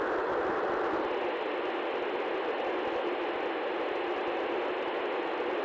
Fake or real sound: real